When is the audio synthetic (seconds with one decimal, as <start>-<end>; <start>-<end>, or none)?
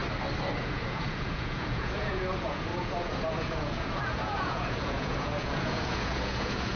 0.6-6.8